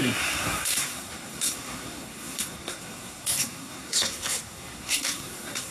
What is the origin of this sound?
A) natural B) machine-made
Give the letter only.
B